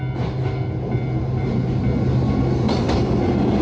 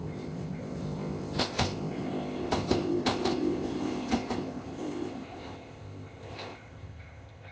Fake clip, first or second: second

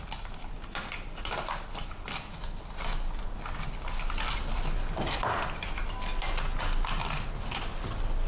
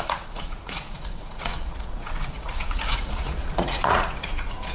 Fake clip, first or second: second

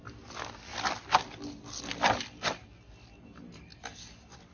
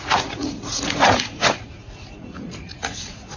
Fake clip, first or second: second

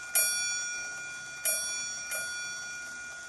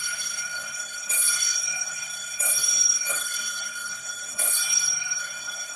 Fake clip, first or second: second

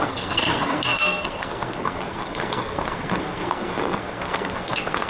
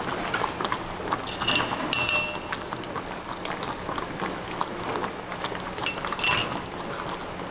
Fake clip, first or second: first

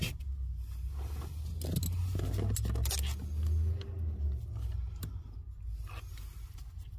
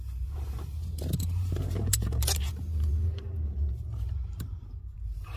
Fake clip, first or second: second